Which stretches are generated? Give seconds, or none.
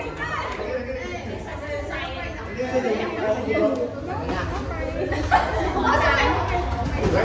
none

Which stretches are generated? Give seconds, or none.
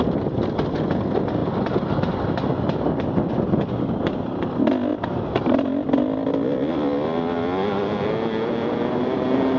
none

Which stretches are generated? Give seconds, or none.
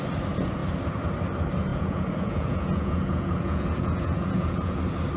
1.7-4.8 (vocoder, Vocos)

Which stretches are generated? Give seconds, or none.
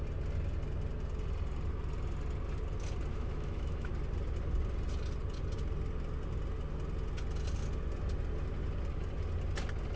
3.1-3.9 (autoencoder, DAC-VAE)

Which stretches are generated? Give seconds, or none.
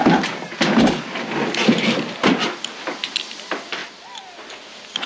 none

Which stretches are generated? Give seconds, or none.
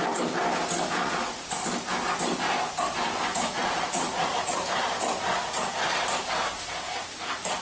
1.0-1.6 (vocoder, Vocos); 3.3-4.6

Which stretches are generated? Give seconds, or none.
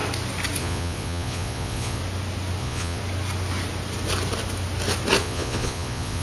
0.6-2.0 (vocoder, Vocos); 2.6-3.0; 5.2-6.2